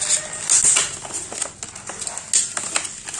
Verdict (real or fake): real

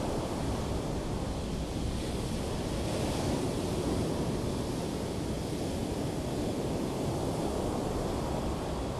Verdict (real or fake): real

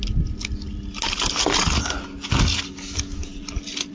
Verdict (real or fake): real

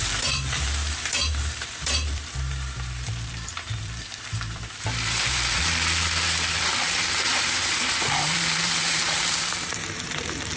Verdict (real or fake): fake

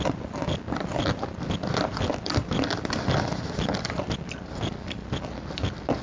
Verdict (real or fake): real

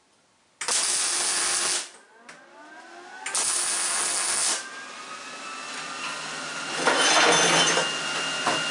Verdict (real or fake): real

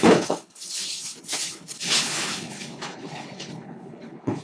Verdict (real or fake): fake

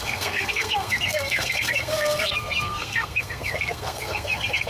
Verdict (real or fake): fake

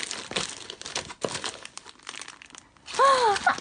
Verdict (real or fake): real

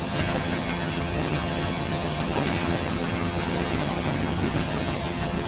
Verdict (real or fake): fake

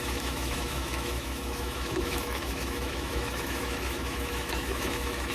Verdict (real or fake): fake